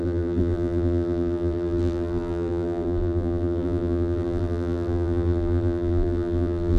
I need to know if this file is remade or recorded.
remade